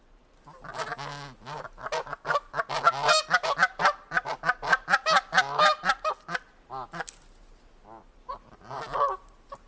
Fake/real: real